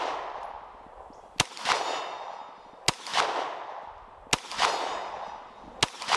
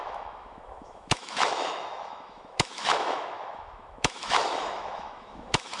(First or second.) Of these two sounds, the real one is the first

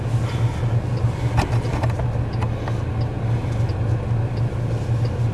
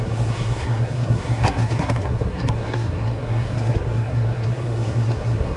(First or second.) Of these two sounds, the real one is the first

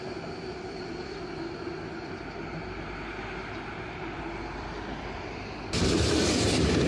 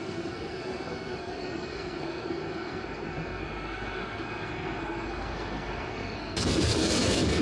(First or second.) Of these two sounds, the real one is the first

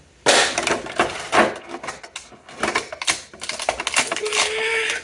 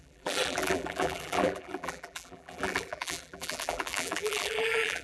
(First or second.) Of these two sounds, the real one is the first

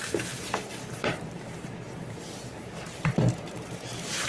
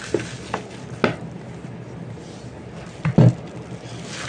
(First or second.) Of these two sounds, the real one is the second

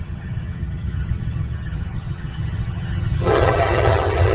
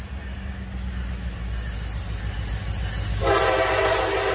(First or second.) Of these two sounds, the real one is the second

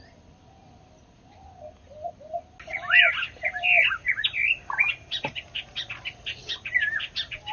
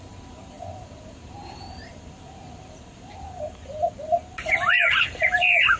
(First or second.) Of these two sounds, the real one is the first